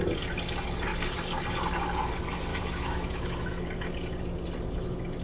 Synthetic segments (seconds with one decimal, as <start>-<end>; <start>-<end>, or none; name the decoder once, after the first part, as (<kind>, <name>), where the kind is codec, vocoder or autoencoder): 2.5-3.9 (autoencoder, DAC-VAE)